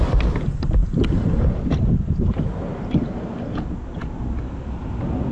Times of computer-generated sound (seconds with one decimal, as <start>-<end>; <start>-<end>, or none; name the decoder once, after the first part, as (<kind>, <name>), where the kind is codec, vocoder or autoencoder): 0.8-1.6 (vocoder, BigVGAN v2); 2.7-3.6